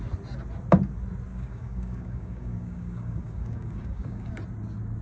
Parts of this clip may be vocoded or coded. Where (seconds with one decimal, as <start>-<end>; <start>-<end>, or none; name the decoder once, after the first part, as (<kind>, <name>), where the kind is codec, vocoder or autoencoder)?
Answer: 1.3-4.3 (codec, DAC)